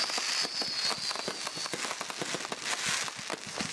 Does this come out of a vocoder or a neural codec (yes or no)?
no